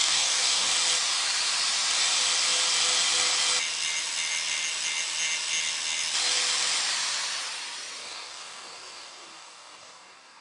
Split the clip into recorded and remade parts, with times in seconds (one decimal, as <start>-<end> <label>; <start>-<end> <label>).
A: 0.0-0.7 remade; 0.7-8.0 recorded; 8.0-10.4 remade